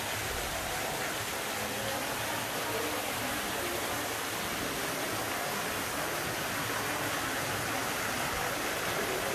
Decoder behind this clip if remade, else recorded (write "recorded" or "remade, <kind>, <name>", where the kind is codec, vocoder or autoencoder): recorded